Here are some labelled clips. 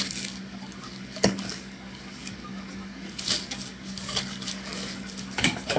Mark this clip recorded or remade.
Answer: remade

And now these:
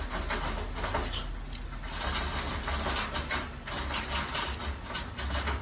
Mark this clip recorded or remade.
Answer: recorded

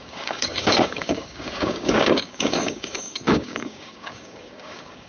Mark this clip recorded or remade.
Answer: remade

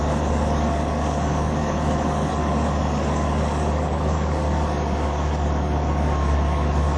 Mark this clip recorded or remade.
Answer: remade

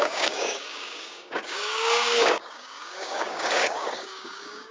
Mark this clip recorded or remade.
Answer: remade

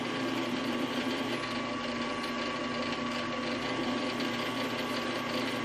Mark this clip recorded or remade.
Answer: recorded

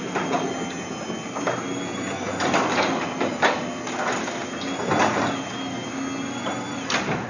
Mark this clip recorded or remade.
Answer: recorded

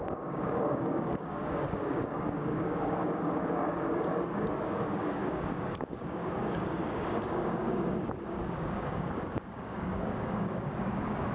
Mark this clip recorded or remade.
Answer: remade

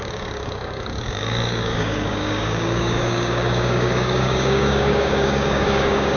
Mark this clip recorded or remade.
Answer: remade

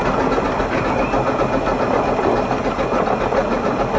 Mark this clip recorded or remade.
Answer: recorded